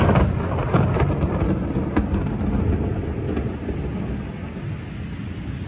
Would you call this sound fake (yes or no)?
no